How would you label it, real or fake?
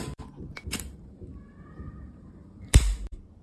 fake